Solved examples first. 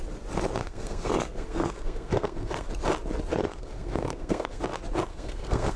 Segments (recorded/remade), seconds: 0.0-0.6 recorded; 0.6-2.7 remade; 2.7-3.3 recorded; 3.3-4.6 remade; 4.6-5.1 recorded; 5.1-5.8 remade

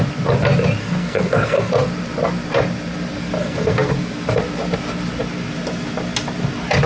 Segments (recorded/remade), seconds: 0.0-0.8 recorded; 0.8-1.7 remade; 1.7-3.4 recorded; 3.4-3.9 remade; 3.9-6.9 recorded

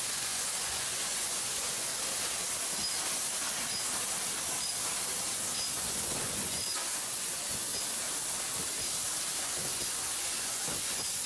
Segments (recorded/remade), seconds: 0.0-1.9 remade; 1.9-5.7 recorded; 5.7-7.7 remade; 7.7-9.3 recorded; 9.3-11.3 remade

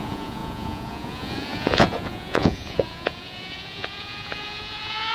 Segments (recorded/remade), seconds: 0.0-5.1 remade

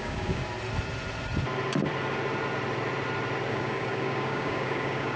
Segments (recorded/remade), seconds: 0.0-0.4 remade; 0.4-3.5 recorded; 3.5-5.2 remade